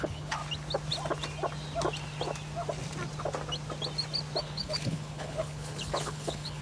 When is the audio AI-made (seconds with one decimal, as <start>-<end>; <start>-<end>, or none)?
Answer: 0.0-0.4; 4.4-6.6